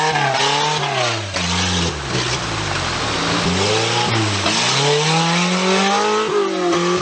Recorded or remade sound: recorded